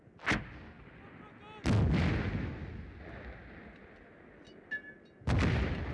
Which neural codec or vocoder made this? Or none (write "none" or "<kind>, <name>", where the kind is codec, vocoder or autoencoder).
none